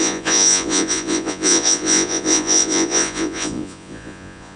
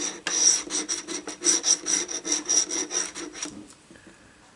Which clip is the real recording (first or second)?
second